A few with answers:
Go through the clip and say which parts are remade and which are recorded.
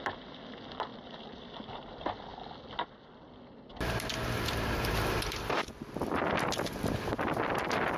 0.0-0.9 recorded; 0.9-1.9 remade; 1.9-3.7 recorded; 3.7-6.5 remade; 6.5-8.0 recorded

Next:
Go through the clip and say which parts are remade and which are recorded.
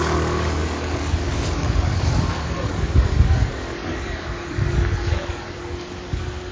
0.0-6.5 remade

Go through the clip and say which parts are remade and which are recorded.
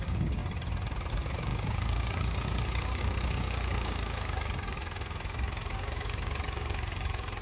0.0-0.4 remade; 0.4-1.1 recorded; 1.1-7.4 remade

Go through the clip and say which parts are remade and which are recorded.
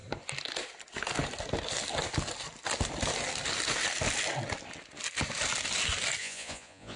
0.0-6.2 recorded; 6.2-7.0 remade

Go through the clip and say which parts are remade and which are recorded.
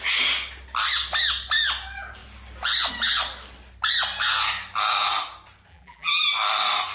0.0-5.7 recorded; 5.7-6.2 remade; 6.2-6.9 recorded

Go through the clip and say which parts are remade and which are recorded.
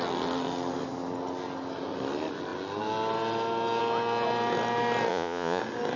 0.0-5.1 recorded; 5.1-5.6 remade; 5.6-6.0 recorded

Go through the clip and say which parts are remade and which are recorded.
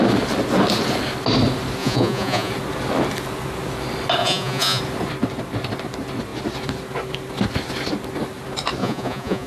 0.0-1.8 recorded; 1.8-2.5 remade; 2.5-4.2 recorded; 4.2-4.8 remade; 4.8-8.8 recorded; 8.8-9.5 remade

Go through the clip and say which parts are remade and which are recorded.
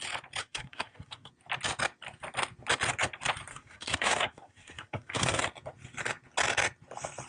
0.0-0.4 recorded; 0.4-1.3 remade; 1.3-3.5 recorded; 3.5-5.4 remade; 5.4-7.3 recorded